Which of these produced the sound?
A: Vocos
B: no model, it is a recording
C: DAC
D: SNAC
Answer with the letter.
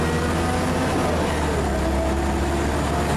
B